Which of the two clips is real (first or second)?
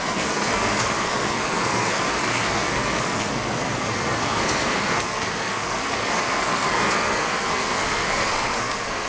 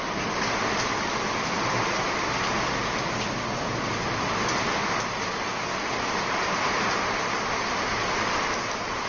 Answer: second